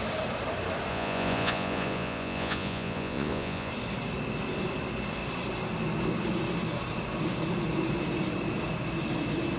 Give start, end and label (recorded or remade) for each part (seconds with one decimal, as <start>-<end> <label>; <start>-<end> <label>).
0.0-0.9 recorded; 0.9-3.7 remade; 3.7-9.6 recorded